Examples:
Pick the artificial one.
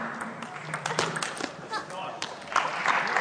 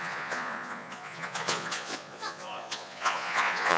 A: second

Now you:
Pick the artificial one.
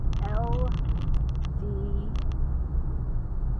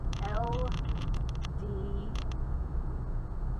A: second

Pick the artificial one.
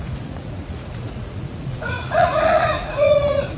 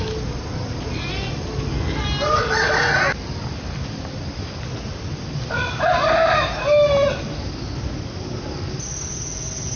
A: first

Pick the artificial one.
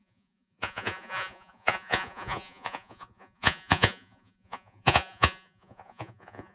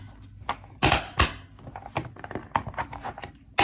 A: first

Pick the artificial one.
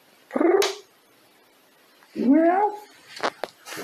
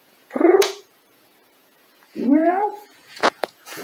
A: second